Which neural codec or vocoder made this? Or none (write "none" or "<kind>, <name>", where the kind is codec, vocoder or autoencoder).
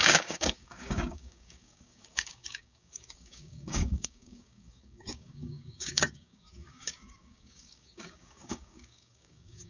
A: codec, DAC